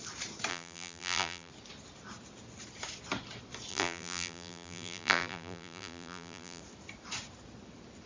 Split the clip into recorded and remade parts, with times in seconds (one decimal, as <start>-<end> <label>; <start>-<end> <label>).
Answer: 0.0-0.5 recorded; 0.5-1.5 remade; 1.5-3.7 recorded; 3.7-6.6 remade; 6.6-8.1 recorded